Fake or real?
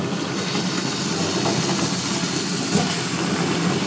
real